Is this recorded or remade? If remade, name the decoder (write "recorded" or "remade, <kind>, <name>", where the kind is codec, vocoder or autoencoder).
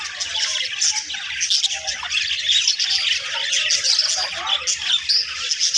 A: recorded